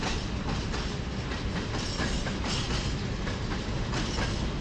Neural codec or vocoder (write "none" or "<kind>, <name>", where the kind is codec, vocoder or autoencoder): none